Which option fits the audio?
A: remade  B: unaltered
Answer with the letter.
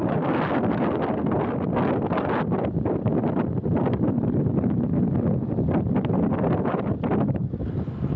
B